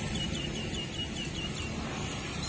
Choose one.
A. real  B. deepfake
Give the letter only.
A